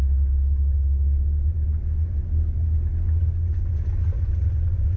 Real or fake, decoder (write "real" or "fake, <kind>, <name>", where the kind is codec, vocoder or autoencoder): real